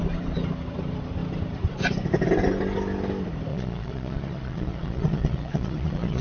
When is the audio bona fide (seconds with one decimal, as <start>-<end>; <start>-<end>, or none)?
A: 0.0-3.5